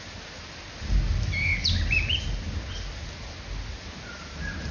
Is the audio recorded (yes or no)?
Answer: yes